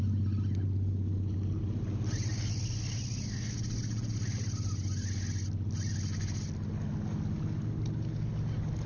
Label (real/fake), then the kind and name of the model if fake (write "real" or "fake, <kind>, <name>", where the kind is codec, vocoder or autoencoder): real